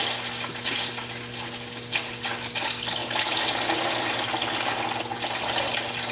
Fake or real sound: real